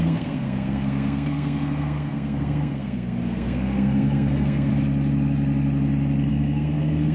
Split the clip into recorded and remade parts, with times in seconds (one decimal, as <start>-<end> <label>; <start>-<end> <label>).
0.0-4.7 remade; 4.7-6.3 recorded; 6.3-7.1 remade